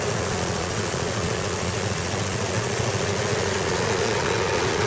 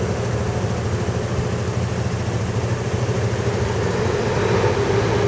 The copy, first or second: first